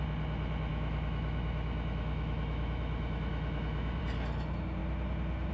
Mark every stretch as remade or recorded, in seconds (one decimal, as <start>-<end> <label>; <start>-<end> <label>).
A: 0.0-0.7 recorded; 0.7-4.0 remade; 4.0-5.5 recorded